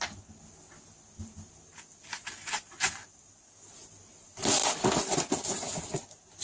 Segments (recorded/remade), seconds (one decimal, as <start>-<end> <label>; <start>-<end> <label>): 0.0-6.4 recorded